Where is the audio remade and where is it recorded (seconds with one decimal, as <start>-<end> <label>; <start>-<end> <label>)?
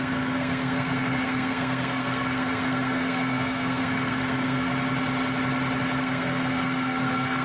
0.0-4.7 remade; 4.7-6.0 recorded; 6.0-7.4 remade